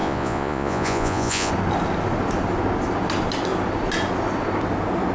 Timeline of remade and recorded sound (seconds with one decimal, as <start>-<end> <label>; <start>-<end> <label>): 0.0-1.5 remade; 1.5-5.1 recorded